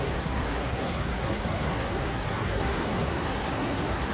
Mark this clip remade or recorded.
remade